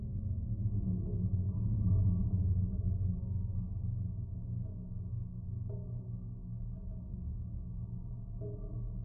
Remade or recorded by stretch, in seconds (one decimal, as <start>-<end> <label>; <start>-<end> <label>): 0.0-9.0 recorded